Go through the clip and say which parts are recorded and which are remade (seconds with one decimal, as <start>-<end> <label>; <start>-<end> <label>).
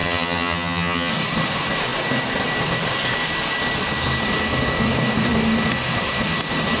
0.0-1.1 remade; 1.1-6.8 recorded